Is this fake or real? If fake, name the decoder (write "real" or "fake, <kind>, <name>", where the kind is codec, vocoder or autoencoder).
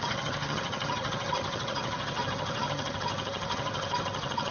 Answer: fake, vocoder, HiFi-GAN